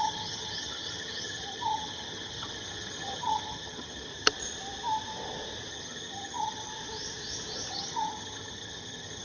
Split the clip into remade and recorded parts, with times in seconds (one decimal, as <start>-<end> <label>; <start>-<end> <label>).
0.0-4.1 remade; 4.1-5.7 recorded; 5.7-6.7 remade; 6.7-7.7 recorded; 7.7-9.2 remade